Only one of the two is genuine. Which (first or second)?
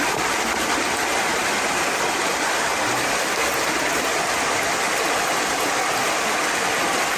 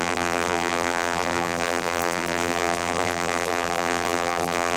first